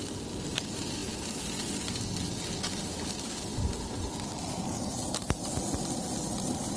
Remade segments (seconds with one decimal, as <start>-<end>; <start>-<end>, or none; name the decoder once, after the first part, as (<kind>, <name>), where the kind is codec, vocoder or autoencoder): none